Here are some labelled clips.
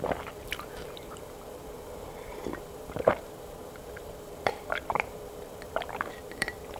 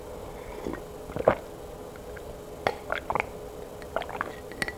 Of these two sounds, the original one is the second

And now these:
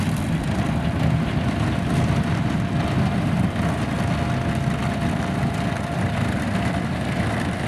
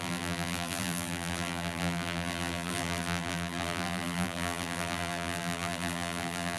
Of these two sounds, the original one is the first